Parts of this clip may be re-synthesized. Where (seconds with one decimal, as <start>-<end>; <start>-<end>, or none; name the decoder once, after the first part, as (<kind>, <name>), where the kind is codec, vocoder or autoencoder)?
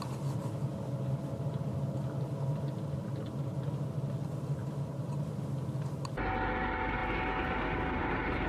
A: none